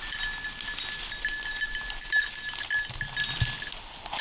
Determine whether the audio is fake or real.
real